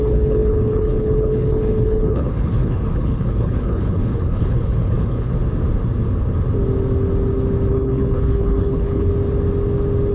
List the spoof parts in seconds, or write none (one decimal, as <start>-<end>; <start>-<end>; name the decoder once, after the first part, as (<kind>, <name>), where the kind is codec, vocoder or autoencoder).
0.0-5.3 (codec, HILCodec); 7.7-9.1